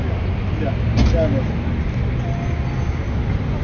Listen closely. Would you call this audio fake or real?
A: real